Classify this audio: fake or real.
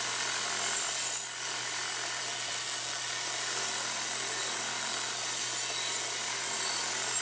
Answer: real